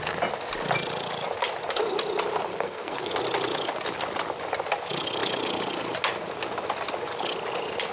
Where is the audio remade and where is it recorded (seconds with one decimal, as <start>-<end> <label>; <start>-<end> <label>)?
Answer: 0.0-2.5 recorded; 2.5-3.1 remade; 3.1-7.9 recorded